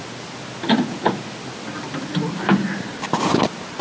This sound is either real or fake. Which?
real